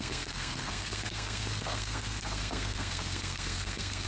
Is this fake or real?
fake